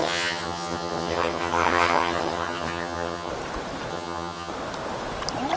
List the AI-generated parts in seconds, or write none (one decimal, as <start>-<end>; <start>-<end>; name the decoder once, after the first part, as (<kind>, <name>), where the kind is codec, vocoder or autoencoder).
0.0-3.3 (vocoder, HiFi-GAN); 3.9-4.5